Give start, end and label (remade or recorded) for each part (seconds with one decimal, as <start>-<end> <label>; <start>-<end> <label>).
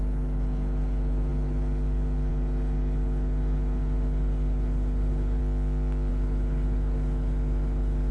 0.0-5.4 remade; 5.4-6.1 recorded; 6.1-8.1 remade